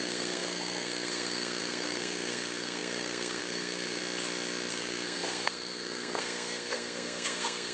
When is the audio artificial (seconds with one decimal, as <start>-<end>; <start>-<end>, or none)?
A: 0.0-4.0; 4.7-7.7

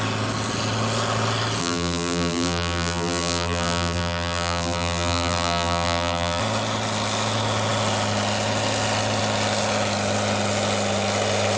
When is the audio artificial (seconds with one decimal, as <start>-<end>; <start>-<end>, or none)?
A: 1.6-6.4

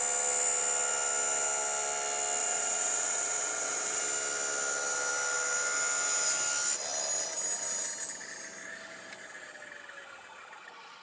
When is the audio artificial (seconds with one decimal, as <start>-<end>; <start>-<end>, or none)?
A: 2.4-4.0

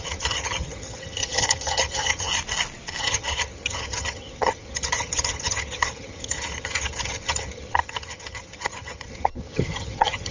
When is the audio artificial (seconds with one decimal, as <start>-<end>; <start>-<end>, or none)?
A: 0.0-2.3; 3.0-10.3

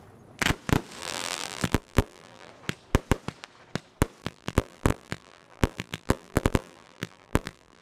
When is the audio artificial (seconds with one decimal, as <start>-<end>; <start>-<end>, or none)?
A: 1.0-2.5; 4.2-7.8

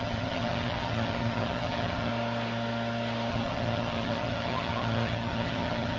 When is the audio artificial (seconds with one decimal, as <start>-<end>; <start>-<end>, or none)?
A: 0.0-2.1; 3.3-6.0

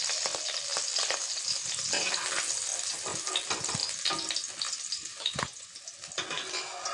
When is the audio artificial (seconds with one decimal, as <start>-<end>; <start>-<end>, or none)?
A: 5.1-5.7

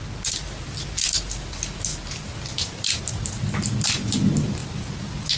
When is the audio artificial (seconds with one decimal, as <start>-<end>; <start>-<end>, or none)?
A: none